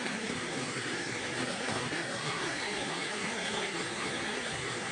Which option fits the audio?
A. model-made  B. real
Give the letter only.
A